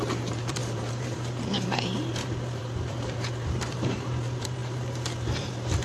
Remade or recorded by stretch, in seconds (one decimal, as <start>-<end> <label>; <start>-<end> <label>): 0.0-5.8 remade